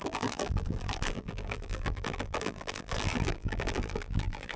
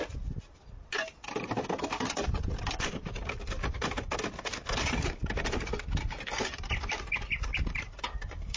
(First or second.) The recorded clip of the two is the second